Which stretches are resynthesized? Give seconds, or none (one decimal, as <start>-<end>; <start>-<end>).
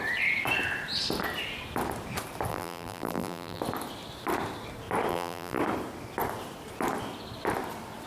2.5-3.6; 5.1-5.6